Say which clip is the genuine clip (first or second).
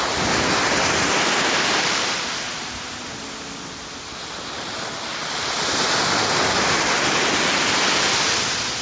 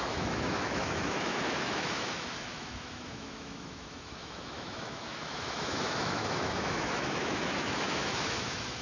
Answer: first